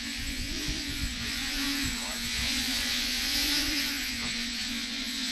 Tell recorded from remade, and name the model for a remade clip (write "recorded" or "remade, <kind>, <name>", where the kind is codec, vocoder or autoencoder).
remade, vocoder, Vocos